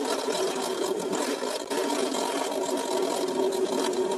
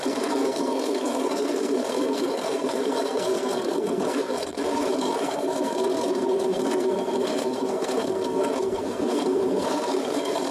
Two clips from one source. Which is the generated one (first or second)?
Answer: second